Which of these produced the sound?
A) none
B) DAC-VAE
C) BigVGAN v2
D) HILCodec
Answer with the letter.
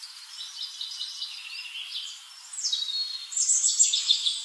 A